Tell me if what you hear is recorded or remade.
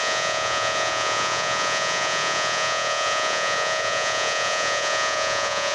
remade